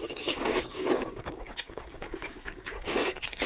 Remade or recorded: remade